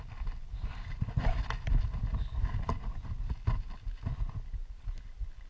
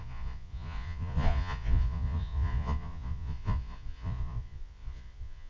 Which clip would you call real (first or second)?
first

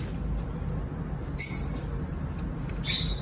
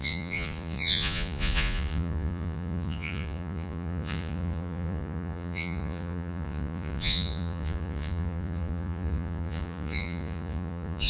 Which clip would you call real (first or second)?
first